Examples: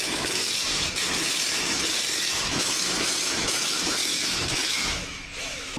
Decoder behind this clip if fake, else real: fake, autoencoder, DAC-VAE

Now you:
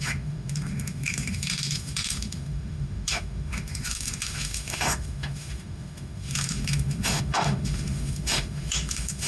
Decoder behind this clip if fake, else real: fake, autoencoder, DAC-VAE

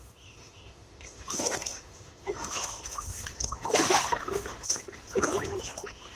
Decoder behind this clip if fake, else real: fake, autoencoder, DAC-VAE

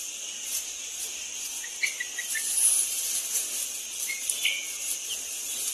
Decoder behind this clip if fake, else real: real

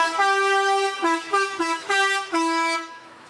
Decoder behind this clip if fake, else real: fake, autoencoder, DAC-VAE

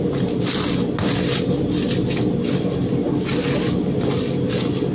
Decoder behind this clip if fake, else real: real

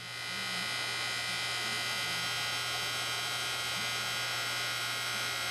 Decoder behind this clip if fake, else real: real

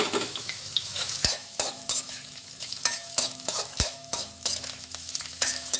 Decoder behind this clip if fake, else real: fake, autoencoder, DAC-VAE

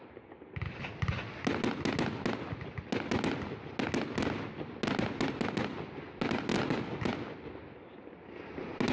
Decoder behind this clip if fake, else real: real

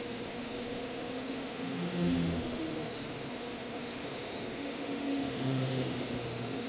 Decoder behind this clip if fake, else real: fake, autoencoder, DAC-VAE